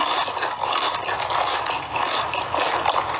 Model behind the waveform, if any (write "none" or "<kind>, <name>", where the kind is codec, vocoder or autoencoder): none